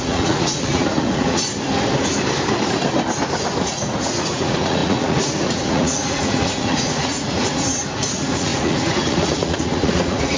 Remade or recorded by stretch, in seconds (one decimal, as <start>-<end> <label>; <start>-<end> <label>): 0.0-1.5 remade; 1.5-3.7 recorded; 3.7-10.4 remade